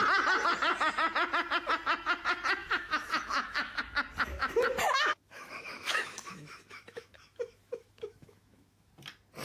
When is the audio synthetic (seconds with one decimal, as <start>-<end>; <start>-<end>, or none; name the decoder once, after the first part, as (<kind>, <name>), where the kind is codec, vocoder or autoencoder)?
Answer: 2.6-3.8 (autoencoder, DAC-VAE); 4.3-8.9